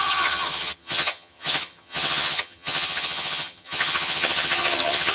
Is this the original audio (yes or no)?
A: no